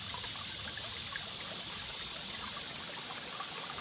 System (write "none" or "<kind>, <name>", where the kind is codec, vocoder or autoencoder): none